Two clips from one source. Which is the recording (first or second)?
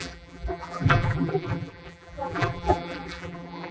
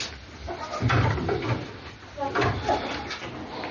second